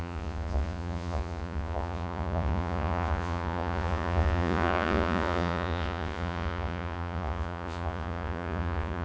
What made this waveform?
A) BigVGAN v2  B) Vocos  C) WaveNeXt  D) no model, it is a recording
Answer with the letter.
B